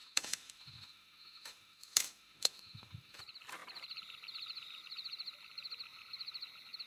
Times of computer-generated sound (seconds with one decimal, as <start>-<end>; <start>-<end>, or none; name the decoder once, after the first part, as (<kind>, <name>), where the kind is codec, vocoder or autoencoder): 0.0-3.2 (autoencoder, DAC-VAE)